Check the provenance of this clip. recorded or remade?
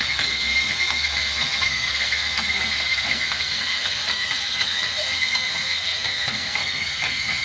remade